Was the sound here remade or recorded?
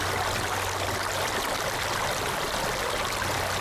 recorded